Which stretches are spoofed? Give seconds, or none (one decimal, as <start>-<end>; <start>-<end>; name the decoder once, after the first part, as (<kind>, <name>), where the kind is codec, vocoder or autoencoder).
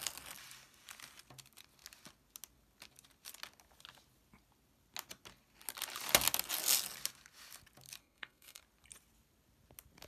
8.0-8.6 (codec, SNAC)